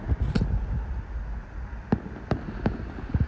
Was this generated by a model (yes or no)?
no